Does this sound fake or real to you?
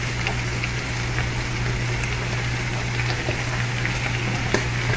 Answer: real